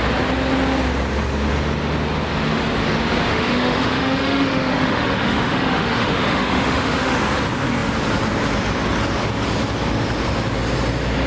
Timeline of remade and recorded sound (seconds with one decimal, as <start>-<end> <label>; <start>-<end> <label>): 0.0-3.3 recorded; 3.3-7.2 remade; 7.2-11.3 recorded